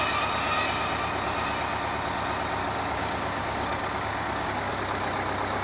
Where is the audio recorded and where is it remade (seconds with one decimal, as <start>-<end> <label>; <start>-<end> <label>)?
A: 0.0-2.6 recorded; 2.6-4.8 remade; 4.8-5.6 recorded